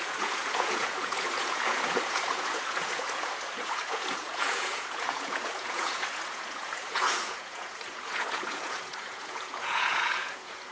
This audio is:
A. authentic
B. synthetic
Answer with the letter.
B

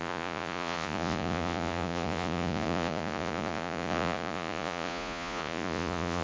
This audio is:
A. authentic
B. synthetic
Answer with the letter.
B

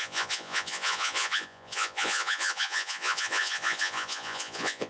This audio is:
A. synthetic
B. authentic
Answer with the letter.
A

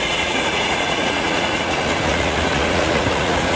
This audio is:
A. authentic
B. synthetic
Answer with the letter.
B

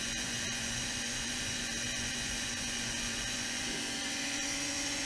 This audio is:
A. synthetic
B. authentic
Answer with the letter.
A